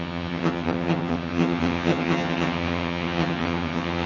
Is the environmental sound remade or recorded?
remade